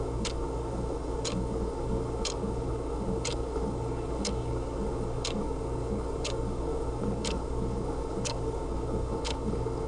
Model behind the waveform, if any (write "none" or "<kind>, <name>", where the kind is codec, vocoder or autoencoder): codec, DAC